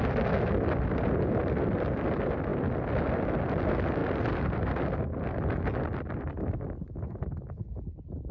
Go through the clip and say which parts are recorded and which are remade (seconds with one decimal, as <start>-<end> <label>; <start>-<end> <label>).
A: 0.0-8.3 recorded